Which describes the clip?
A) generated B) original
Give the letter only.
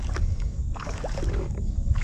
A